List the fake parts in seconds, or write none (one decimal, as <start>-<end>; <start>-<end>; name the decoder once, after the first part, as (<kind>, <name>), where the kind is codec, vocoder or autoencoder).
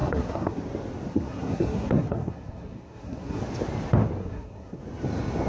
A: 0.0-0.6 (codec, SNAC); 1.1-3.4; 4.2-4.8